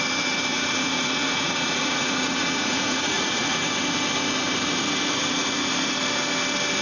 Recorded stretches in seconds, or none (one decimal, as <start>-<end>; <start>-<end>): 0.0-0.5; 3.6-6.8